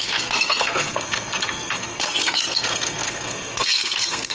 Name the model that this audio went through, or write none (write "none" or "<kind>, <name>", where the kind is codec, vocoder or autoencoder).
codec, SNAC